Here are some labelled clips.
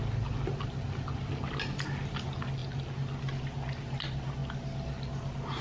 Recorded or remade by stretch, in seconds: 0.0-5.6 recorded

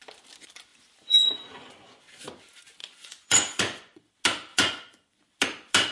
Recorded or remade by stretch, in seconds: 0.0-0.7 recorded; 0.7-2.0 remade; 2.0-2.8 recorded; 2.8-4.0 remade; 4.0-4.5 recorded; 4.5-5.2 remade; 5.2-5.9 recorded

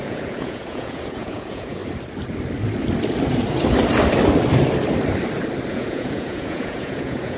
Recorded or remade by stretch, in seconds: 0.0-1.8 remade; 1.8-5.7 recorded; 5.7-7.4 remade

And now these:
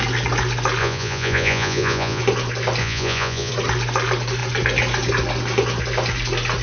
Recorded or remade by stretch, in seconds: 0.0-0.8 recorded; 0.8-2.2 remade; 2.2-2.8 recorded; 2.8-3.5 remade; 3.5-6.6 recorded

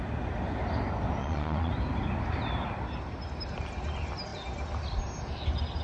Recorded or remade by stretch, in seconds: 0.0-1.2 recorded; 1.2-1.7 remade; 1.7-5.8 recorded